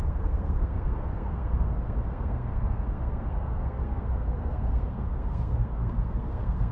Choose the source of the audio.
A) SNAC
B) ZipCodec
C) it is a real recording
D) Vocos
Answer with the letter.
A